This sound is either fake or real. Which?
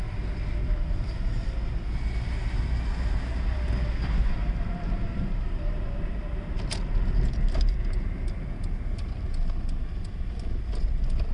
real